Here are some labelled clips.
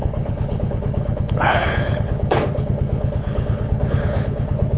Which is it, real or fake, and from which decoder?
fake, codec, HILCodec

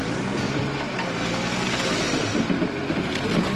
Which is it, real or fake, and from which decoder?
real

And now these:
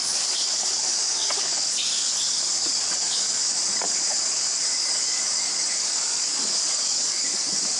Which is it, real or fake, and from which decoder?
fake, codec, DAC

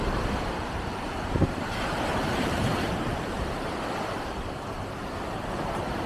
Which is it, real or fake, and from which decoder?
fake, vocoder, BigVGAN v2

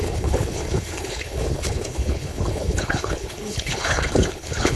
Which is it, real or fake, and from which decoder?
fake, codec, HILCodec